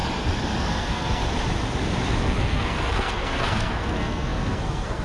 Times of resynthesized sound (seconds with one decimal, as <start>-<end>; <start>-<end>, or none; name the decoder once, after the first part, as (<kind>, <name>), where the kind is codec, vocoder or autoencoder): 0.6-1.2 (codec, SNAC); 2.2-5.0